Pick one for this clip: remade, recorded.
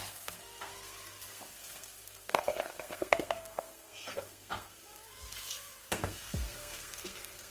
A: remade